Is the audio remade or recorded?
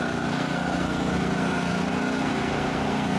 remade